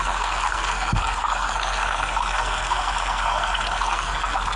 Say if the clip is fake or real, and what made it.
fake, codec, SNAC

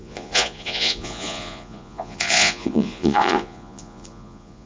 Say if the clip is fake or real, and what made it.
fake, vocoder, Vocos